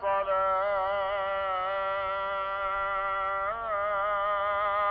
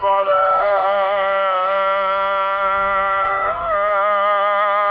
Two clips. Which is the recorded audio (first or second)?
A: first